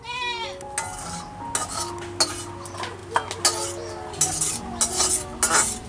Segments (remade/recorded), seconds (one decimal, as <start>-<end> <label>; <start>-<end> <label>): 0.0-5.9 recorded